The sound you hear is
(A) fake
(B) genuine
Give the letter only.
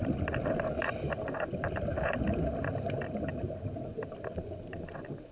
B